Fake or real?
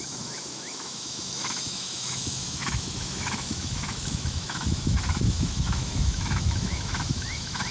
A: fake